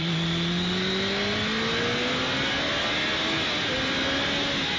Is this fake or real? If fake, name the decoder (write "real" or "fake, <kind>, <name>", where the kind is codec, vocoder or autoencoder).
real